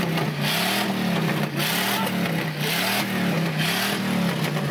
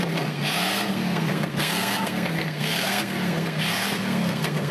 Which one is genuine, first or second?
first